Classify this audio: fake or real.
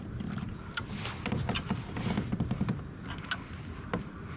real